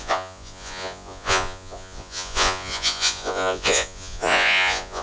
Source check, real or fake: fake